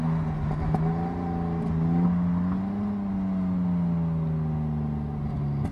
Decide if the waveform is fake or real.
real